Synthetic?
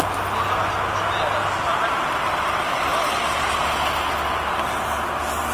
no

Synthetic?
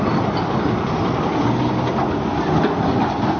no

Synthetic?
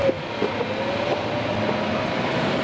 no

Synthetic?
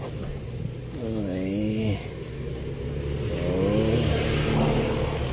no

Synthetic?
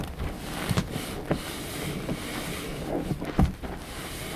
no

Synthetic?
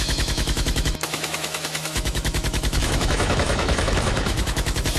yes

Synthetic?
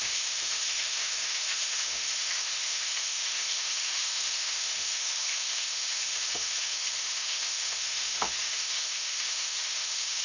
yes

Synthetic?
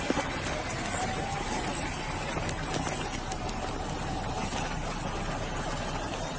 no